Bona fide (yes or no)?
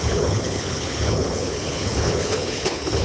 no